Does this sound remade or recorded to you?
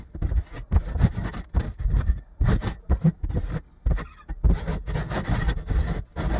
recorded